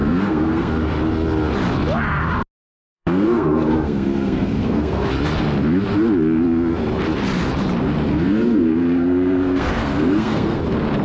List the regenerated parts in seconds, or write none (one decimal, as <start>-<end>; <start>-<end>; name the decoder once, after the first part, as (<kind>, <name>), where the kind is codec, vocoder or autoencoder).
0.0-0.7 (codec, SNAC); 2.9-5.1; 8.1-10.6